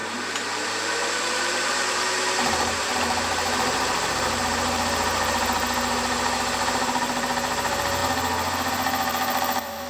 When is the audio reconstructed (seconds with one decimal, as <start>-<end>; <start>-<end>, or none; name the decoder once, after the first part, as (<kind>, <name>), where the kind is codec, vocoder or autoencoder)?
0.0-9.9 (vocoder, BigVGAN v2)